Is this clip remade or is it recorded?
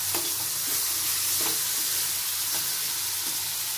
recorded